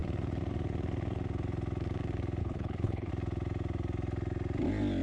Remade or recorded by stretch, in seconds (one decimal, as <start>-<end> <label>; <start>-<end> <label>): 0.0-2.4 recorded; 2.4-3.1 remade; 3.1-5.0 recorded